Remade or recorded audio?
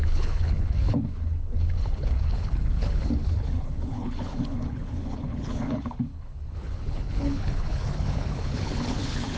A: remade